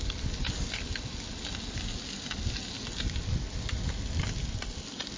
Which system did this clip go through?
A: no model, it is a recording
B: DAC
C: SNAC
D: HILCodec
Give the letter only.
A